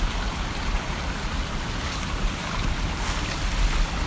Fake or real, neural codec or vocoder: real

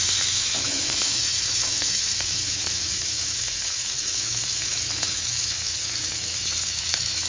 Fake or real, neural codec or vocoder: fake, autoencoder, DAC-VAE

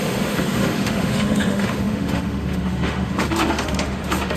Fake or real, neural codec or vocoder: fake, autoencoder, DAC-VAE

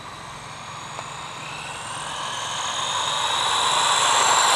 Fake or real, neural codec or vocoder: real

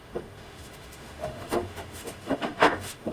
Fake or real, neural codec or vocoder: fake, autoencoder, DAC-VAE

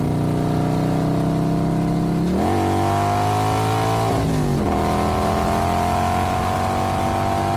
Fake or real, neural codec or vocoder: real